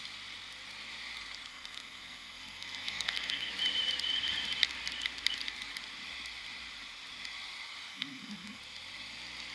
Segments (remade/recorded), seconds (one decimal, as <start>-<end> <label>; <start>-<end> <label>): 0.0-1.5 recorded; 1.5-3.5 remade; 3.5-7.9 recorded; 7.9-8.6 remade; 8.6-9.5 recorded